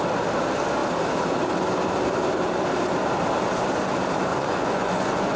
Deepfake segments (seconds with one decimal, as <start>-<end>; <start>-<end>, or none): 4.3-5.4